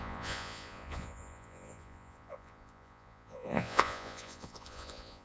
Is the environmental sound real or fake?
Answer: fake